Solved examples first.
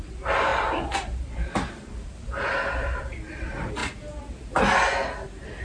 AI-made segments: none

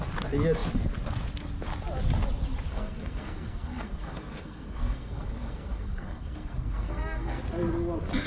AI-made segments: 2.7-7.4 (codec, SNAC)

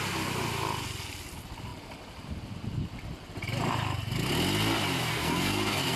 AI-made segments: 5.1-6.0 (codec, SNAC)

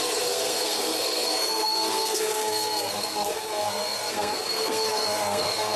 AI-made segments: 0.0-5.8 (codec, SNAC)

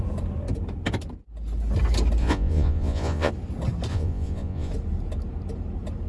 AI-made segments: 2.2-3.3 (vocoder, Vocos); 3.9-4.7